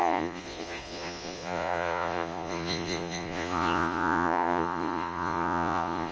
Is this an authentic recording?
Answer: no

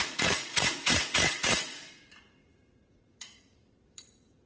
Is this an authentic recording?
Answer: no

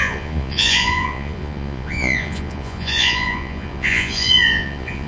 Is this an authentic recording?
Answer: no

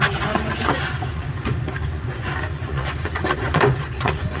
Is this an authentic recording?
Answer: no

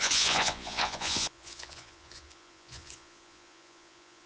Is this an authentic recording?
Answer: no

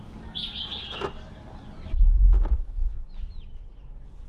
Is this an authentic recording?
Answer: yes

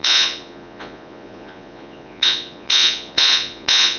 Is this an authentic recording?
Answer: no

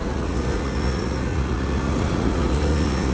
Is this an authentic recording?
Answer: no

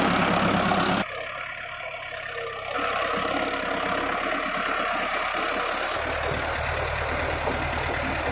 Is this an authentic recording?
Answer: yes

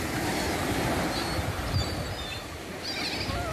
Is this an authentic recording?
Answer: yes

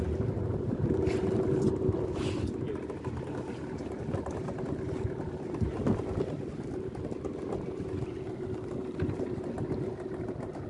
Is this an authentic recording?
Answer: yes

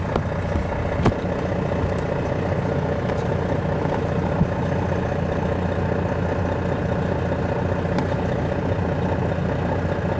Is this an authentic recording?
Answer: yes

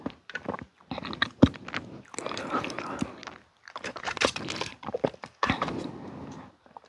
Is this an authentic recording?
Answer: yes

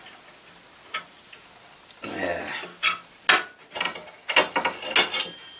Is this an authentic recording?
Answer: yes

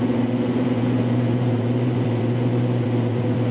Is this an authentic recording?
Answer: no